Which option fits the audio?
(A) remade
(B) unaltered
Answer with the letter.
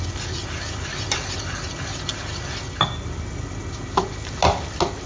B